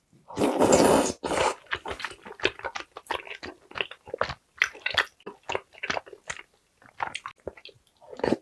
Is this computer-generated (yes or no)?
no